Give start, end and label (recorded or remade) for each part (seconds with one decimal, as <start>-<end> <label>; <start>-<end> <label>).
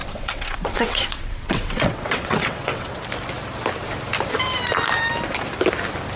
0.0-3.0 remade; 3.0-6.2 recorded